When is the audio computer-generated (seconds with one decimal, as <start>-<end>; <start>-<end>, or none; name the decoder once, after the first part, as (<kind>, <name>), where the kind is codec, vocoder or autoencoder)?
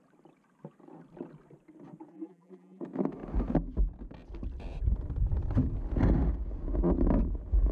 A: 2.1-2.8 (vocoder, BigVGAN v2)